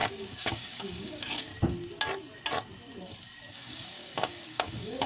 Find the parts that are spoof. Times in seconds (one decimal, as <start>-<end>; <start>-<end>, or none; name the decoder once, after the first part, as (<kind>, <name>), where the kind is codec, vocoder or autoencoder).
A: 0.0-1.5 (codec, DAC); 3.5-5.1